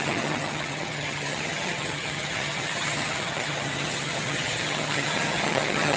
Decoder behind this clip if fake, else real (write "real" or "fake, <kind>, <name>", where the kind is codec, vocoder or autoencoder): fake, vocoder, HiFi-GAN